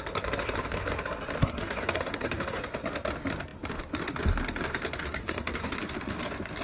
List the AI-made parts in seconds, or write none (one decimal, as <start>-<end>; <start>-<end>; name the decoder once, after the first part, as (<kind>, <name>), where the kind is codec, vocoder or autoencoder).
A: 1.4-2.6 (codec, SNAC); 5.2-5.8